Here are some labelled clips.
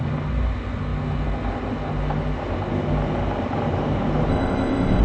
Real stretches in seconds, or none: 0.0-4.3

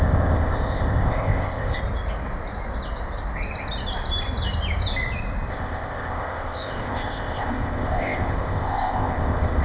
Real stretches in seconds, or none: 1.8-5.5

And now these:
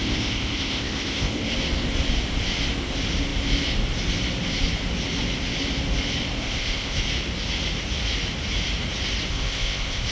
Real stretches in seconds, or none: 1.5-6.4; 7.0-9.3